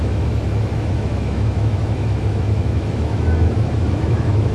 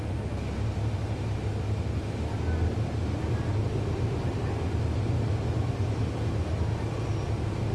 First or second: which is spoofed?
first